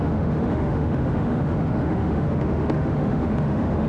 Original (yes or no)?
no